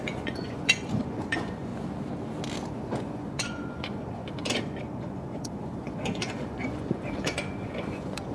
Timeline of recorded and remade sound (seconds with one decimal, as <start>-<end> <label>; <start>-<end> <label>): 0.0-1.7 remade; 1.7-2.7 recorded; 2.7-8.3 remade

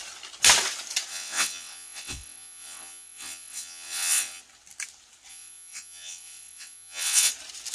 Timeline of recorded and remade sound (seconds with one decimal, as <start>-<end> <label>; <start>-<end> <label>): 0.0-1.1 recorded; 1.1-4.4 remade; 4.4-5.3 recorded; 5.3-7.3 remade; 7.3-7.7 recorded

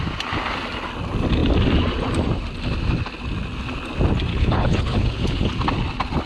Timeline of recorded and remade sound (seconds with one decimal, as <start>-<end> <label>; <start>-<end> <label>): 0.0-4.3 recorded; 4.3-5.5 remade; 5.5-6.3 recorded

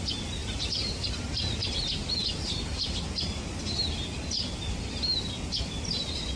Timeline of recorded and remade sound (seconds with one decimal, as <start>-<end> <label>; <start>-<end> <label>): 0.0-0.4 recorded; 0.4-1.7 remade; 1.7-6.4 recorded

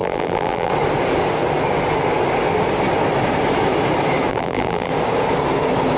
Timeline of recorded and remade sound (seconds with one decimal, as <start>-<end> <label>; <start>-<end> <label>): 0.0-0.7 remade; 0.7-4.3 recorded; 4.3-4.9 remade; 4.9-6.0 recorded